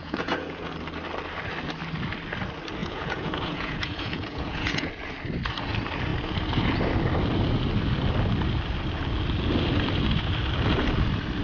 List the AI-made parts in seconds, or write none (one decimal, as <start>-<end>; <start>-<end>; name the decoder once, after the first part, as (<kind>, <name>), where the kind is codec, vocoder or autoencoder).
0.0-0.7 (vocoder, Vocos); 2.8-4.9